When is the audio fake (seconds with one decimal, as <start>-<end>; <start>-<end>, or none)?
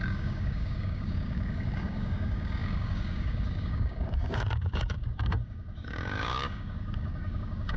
0.0-7.8